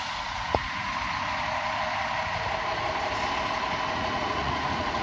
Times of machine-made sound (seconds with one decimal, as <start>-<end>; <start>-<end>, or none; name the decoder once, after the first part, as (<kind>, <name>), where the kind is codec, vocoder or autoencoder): 0.0-0.9 (vocoder, Vocos); 3.9-5.0